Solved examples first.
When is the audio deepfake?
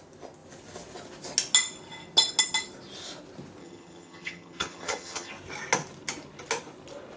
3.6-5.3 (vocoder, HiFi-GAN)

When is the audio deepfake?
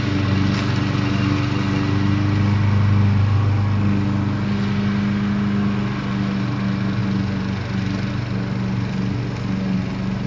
none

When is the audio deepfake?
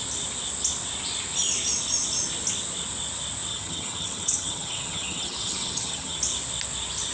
3.5-6.2 (vocoder, HiFi-GAN)